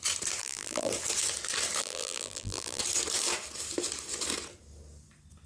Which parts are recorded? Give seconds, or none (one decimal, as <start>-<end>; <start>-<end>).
0.0-0.4; 0.9-1.8; 2.8-5.5